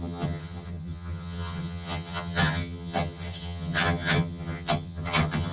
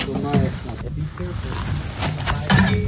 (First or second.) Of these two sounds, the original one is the second